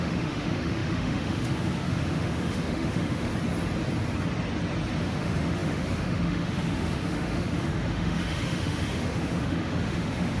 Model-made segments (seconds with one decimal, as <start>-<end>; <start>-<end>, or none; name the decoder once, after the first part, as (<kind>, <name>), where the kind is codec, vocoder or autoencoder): 0.0-3.3 (autoencoder, DAC-VAE); 5.0-10.4